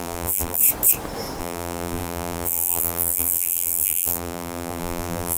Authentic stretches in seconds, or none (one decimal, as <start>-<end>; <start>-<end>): 0.6-1.4